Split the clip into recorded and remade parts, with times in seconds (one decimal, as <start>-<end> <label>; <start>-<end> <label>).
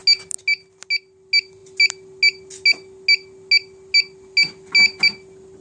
0.0-5.6 recorded